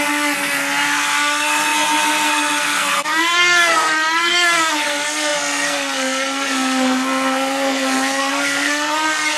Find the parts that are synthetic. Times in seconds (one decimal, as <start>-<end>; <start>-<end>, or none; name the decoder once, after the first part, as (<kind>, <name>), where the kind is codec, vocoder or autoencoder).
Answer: 0.0-9.4 (codec, SNAC)